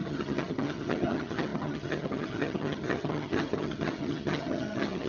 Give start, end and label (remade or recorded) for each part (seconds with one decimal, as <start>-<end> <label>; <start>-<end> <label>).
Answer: 0.0-5.1 remade

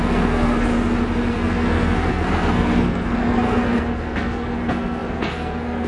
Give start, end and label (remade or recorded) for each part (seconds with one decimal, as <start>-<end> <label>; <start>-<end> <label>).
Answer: 0.0-0.7 remade; 0.7-1.3 recorded; 1.3-5.9 remade

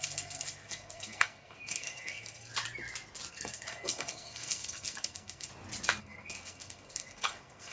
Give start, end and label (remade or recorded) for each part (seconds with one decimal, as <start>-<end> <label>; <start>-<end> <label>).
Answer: 0.0-2.5 remade; 2.5-3.3 recorded; 3.3-5.5 remade; 5.5-6.0 recorded; 6.0-7.7 remade

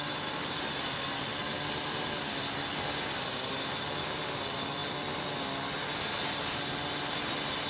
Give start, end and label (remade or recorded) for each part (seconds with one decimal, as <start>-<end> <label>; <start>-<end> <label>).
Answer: 0.0-7.7 recorded